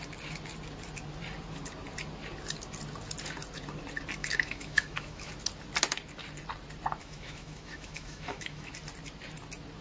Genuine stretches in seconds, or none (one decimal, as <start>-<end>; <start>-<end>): 0.0-4.2; 5.3-7.0; 8.7-9.8